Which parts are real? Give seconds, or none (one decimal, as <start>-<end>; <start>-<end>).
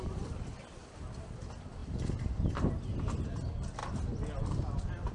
0.0-5.1